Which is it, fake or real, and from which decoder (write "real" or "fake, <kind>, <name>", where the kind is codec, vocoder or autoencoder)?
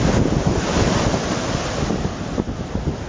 real